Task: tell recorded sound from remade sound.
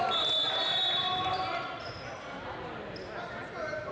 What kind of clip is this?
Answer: recorded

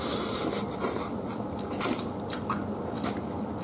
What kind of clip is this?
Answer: recorded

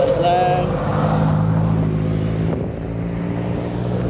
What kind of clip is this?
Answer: recorded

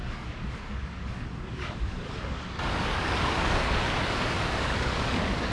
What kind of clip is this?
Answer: remade